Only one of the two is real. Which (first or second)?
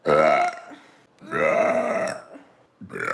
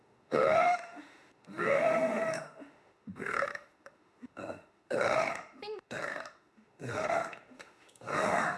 first